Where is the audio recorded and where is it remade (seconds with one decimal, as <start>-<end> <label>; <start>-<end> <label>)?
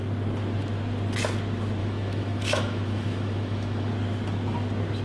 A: 0.0-1.8 recorded; 1.8-3.9 remade; 3.9-5.0 recorded